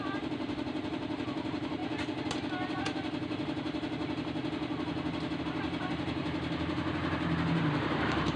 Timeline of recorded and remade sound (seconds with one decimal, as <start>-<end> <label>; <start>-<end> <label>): 0.0-1.8 remade; 1.8-5.4 recorded; 5.4-8.4 remade